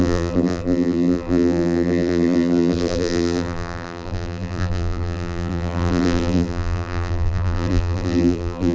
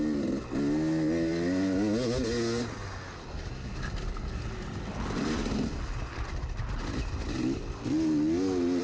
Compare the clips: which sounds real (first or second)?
second